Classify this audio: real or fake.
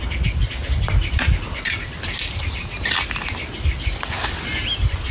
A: real